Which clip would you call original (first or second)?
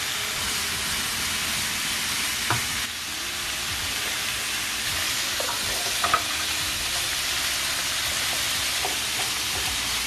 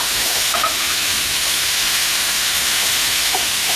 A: first